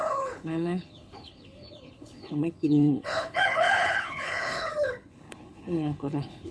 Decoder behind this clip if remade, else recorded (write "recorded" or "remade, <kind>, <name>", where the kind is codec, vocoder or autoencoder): remade, codec, HILCodec